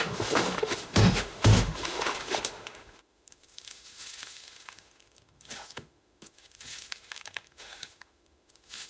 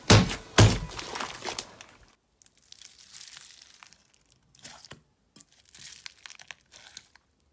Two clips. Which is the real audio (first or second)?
second